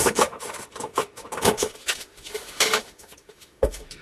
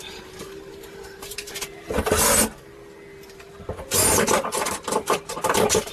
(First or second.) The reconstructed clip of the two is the first